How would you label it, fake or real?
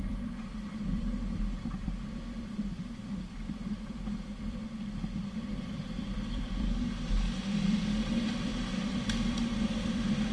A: fake